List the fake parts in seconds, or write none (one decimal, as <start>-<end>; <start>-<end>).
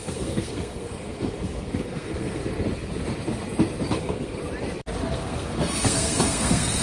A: 0.0-2.4; 4.0-4.4; 5.1-6.8